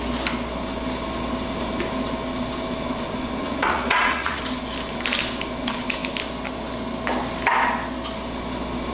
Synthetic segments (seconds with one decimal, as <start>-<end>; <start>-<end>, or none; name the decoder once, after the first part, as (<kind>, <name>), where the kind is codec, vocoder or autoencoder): 3.4-4.4 (vocoder, Vocos)

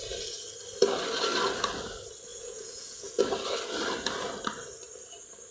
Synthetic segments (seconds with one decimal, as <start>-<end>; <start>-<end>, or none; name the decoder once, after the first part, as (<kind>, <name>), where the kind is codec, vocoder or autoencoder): 2.3-3.2 (vocoder, Vocos)

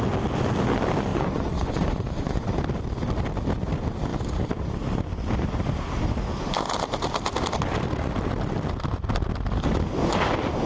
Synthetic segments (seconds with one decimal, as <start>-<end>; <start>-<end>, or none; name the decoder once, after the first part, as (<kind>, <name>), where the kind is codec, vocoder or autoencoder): 1.1-2.5 (vocoder, Vocos)

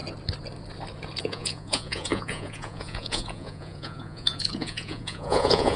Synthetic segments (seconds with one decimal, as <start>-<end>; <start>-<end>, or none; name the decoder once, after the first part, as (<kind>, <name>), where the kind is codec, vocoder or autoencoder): 1.2-5.8 (vocoder, Vocos)

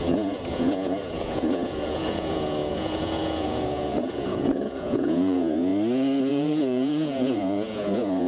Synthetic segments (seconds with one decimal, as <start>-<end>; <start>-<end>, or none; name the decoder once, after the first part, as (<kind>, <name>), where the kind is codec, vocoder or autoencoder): 0.0-5.7 (vocoder, Vocos); 6.3-8.3

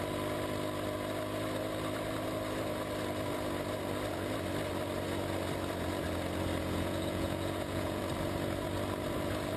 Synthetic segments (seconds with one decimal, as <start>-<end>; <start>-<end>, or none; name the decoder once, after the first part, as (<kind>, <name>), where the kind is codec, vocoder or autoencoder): 6.6-8.0 (vocoder, Vocos)